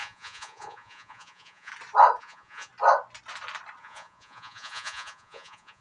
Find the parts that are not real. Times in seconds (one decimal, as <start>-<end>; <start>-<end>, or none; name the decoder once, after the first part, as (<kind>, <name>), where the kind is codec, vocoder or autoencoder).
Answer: 0.0-1.7 (vocoder, Vocos); 2.2-2.7; 3.8-5.8